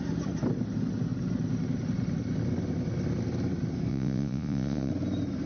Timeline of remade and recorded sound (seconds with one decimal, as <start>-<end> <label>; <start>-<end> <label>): 0.0-3.9 recorded; 3.9-4.9 remade; 4.9-5.5 recorded